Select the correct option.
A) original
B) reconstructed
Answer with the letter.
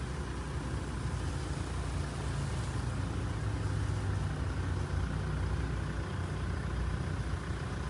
A